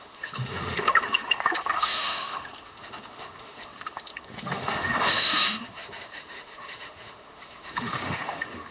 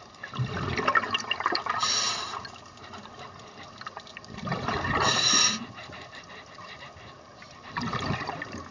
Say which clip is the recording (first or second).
second